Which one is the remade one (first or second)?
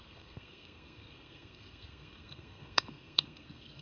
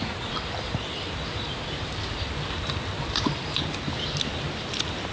first